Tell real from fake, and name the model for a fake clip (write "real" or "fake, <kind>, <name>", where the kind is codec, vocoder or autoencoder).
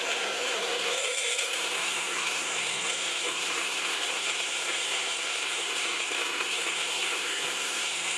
fake, codec, SNAC